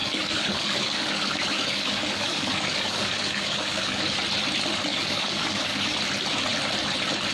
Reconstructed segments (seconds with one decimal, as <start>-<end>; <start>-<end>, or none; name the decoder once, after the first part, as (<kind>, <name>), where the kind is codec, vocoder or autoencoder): 0.0-4.0 (codec, DAC); 4.9-6.0